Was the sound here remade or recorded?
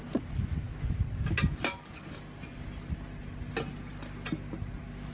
recorded